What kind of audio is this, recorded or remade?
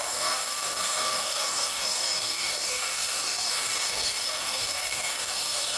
remade